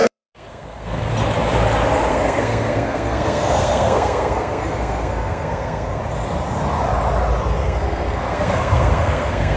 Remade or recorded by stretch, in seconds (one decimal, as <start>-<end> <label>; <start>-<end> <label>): 0.0-1.1 remade; 1.1-2.1 recorded; 2.1-6.0 remade; 6.0-7.6 recorded; 7.6-9.6 remade